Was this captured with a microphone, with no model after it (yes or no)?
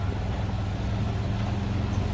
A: yes